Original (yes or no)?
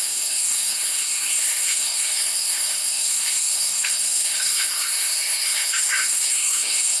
no